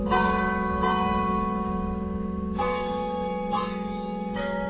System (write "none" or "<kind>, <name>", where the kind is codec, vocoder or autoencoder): codec, DAC